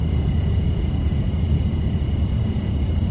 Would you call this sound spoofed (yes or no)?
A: yes